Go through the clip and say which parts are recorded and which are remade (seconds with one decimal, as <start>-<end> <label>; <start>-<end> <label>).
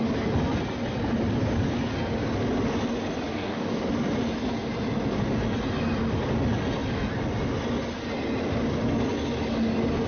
0.0-3.3 recorded; 3.3-3.8 remade; 3.8-10.1 recorded